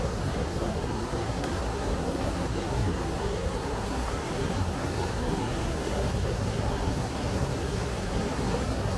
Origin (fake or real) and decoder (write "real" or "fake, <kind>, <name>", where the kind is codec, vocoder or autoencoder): fake, codec, SNAC